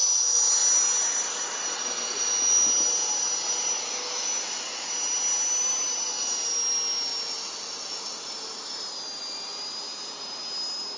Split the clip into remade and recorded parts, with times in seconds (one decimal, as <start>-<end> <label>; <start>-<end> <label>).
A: 0.0-11.0 recorded